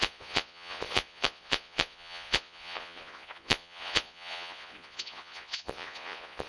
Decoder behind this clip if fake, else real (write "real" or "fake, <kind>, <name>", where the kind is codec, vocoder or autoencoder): fake, vocoder, Vocos